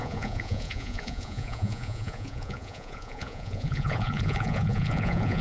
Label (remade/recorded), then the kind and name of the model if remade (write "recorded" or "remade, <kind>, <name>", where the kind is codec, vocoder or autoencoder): remade, vocoder, Vocos